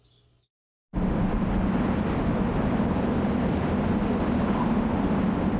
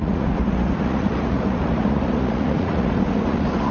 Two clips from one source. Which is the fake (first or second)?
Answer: second